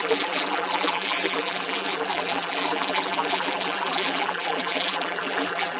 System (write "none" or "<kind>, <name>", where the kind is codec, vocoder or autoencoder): vocoder, BigVGAN v2